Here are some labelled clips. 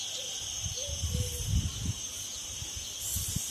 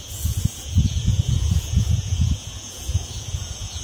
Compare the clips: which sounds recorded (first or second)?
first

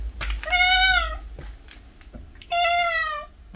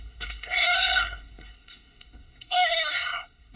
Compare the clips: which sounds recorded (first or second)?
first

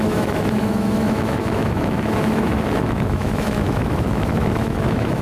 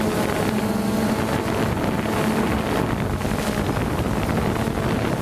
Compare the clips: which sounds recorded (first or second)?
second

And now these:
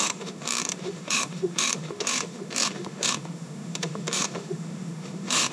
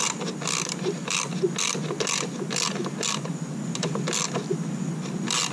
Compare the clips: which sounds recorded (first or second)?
second